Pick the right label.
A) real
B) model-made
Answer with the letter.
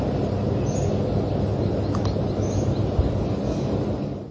A